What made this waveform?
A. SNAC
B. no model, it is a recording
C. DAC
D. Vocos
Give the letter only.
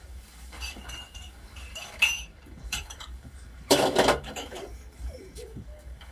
C